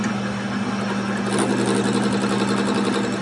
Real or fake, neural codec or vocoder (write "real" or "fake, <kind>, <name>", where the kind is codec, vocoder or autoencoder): real